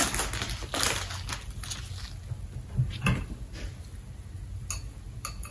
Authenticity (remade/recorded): recorded